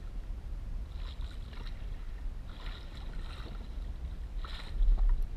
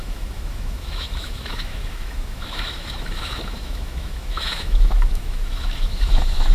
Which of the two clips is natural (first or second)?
first